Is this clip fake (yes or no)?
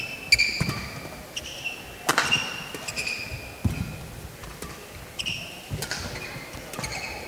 no